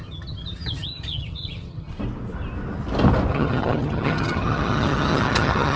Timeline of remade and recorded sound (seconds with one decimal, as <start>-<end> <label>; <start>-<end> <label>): 0.0-1.9 remade; 1.9-3.3 recorded; 3.3-5.8 remade